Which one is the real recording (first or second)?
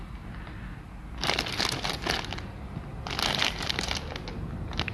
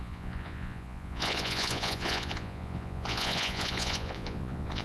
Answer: first